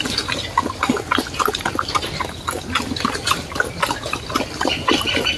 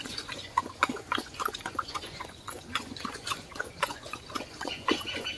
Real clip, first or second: first